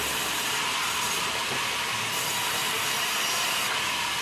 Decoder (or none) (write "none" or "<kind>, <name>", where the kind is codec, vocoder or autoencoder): none